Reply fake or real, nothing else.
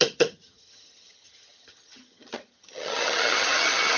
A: fake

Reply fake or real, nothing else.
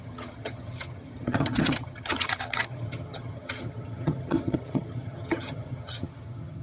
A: fake